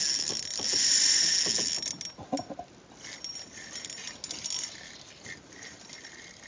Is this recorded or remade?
recorded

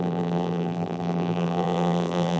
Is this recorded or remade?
remade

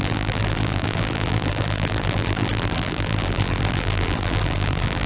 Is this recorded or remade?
remade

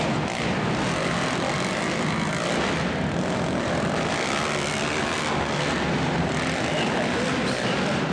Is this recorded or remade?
recorded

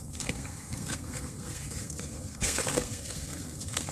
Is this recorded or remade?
remade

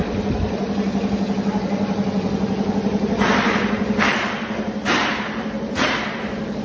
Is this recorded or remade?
remade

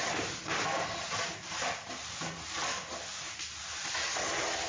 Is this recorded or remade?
recorded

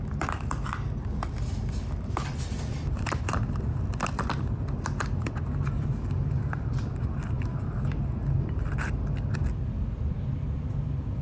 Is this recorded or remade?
remade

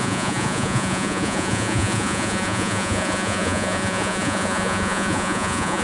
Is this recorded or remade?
remade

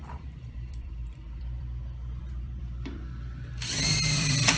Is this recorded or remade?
remade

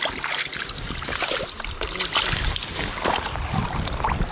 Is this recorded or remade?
recorded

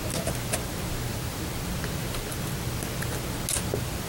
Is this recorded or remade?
recorded